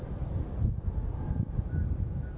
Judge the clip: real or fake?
real